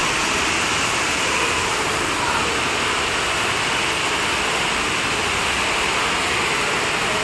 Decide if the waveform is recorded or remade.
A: recorded